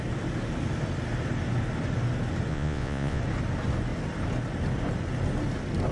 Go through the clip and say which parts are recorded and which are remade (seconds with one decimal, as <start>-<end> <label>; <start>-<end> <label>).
0.0-2.5 recorded; 2.5-3.2 remade; 3.2-5.9 recorded